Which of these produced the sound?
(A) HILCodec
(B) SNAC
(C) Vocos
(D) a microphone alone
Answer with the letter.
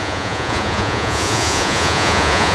C